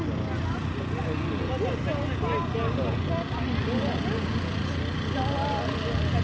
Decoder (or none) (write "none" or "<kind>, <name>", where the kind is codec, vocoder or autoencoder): none